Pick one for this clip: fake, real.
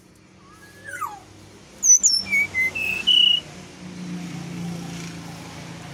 real